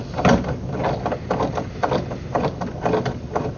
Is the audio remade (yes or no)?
yes